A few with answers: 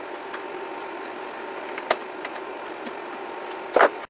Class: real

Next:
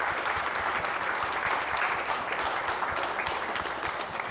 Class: real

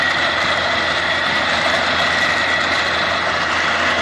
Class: real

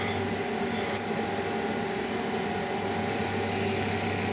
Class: real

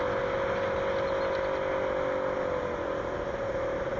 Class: real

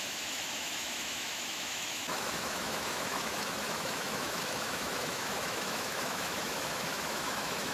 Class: fake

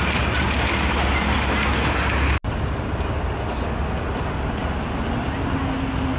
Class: real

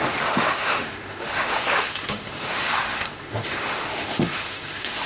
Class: fake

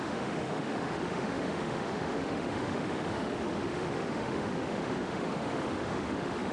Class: fake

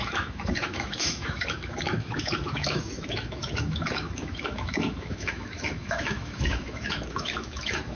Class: fake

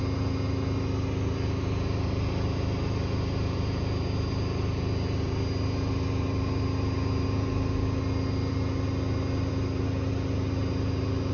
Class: real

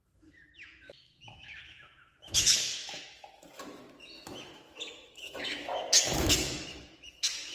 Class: fake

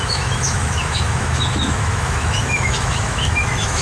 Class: fake